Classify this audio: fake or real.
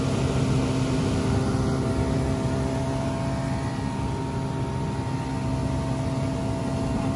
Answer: real